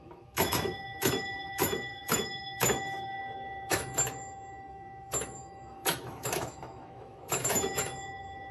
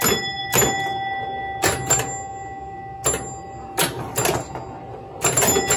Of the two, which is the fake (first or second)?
first